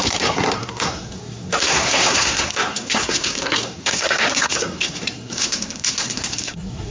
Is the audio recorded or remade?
remade